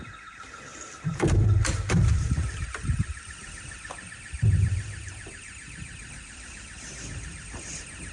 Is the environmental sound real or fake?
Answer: fake